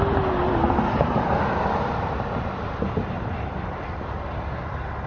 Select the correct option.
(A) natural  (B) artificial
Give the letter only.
A